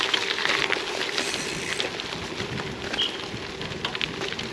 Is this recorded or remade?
recorded